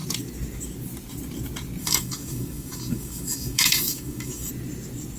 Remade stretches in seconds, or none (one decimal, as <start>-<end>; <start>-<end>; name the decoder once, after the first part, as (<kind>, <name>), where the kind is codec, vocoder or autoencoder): 1.8-4.5 (autoencoder, DAC-VAE)